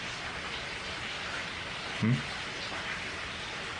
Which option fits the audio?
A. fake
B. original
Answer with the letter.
B